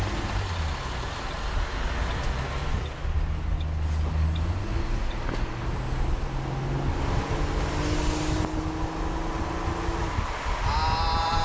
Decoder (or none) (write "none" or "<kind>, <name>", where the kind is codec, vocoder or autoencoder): none